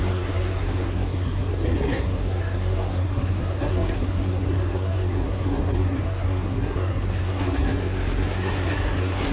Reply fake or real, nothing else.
fake